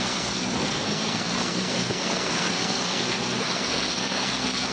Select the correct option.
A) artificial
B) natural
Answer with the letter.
A